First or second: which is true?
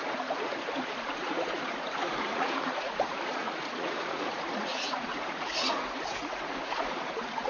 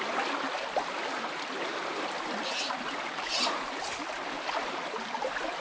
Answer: second